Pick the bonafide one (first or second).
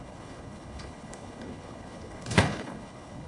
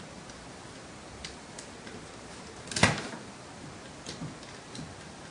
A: second